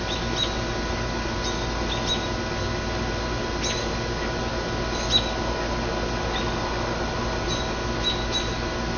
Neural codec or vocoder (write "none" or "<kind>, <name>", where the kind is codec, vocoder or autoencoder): none